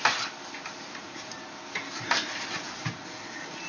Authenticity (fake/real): real